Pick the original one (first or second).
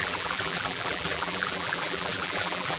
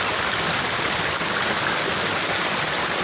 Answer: second